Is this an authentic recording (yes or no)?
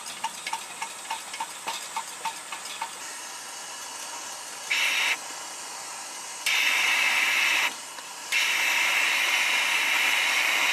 yes